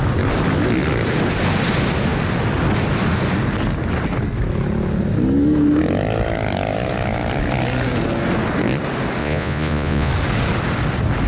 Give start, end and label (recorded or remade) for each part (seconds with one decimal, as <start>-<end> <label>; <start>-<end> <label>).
0.0-9.2 recorded; 9.2-10.1 remade; 10.1-11.3 recorded